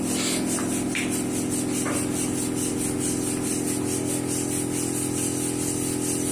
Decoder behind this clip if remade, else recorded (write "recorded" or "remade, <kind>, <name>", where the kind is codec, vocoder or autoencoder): recorded